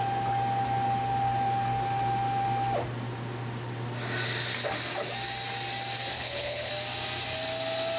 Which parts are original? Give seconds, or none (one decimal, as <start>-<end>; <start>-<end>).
0.0-6.1; 6.7-8.0